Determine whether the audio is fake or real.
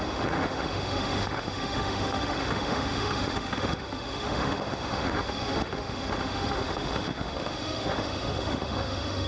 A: fake